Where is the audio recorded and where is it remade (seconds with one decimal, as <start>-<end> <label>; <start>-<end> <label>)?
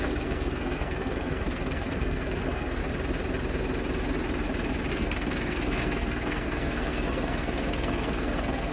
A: 0.0-2.8 remade; 2.8-4.9 recorded; 4.9-8.7 remade